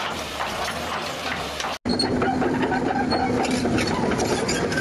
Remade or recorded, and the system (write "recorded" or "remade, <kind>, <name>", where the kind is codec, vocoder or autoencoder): recorded